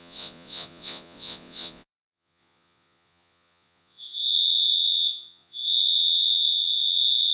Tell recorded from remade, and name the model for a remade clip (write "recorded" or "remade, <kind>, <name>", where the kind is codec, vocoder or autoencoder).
remade, vocoder, Vocos